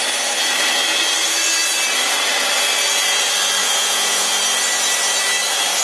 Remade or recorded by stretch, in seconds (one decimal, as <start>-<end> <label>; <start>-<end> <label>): 0.0-3.6 recorded; 3.6-4.3 remade; 4.3-5.8 recorded